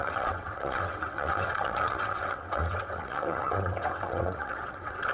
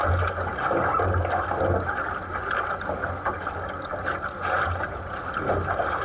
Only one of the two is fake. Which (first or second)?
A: first